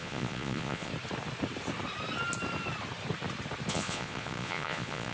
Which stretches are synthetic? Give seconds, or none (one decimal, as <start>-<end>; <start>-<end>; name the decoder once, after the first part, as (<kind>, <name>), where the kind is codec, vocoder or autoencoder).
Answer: 0.0-0.9 (vocoder, Vocos); 3.7-5.1